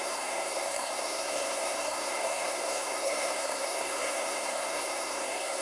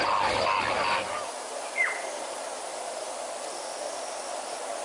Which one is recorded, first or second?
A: second